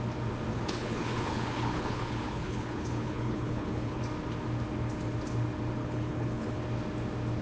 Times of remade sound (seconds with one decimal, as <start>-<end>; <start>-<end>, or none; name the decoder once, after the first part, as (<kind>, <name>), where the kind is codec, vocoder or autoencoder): 0.5-4.0 (codec, HILCodec); 5.8-6.6